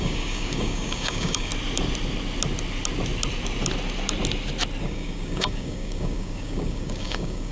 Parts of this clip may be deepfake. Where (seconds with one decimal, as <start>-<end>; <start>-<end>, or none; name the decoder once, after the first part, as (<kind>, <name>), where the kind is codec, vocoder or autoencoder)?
0.0-1.5 (codec, DAC); 4.8-7.5